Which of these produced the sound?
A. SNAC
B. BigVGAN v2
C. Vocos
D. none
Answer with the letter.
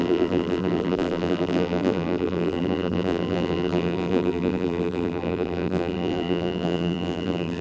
B